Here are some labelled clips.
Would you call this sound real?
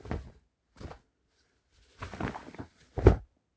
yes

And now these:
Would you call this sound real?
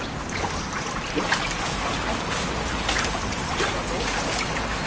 yes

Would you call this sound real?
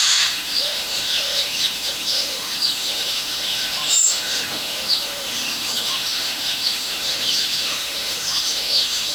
no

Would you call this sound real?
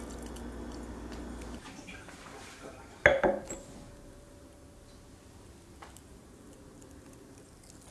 yes